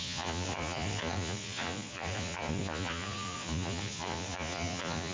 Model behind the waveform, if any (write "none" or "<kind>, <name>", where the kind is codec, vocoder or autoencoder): vocoder, Vocos